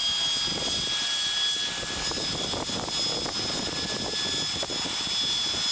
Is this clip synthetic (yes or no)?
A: no